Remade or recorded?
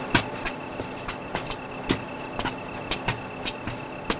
recorded